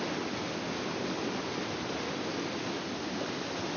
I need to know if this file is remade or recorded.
recorded